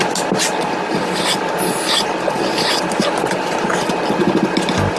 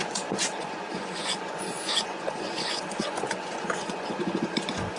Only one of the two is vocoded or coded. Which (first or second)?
second